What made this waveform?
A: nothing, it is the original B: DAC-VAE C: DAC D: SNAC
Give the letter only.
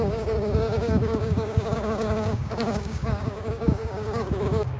C